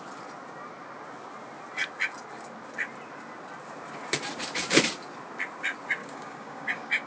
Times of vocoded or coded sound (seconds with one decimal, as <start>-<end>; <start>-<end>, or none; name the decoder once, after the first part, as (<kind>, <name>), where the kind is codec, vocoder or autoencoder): 6.0-7.1 (codec, DAC)